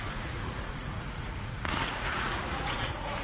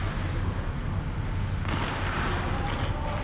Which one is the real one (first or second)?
second